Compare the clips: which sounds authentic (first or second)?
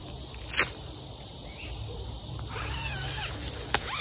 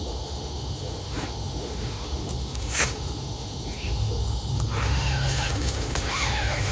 first